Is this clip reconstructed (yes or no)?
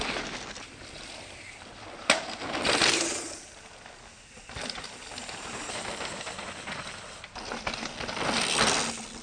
no